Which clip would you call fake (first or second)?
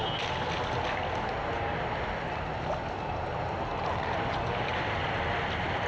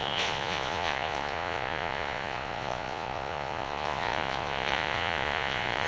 second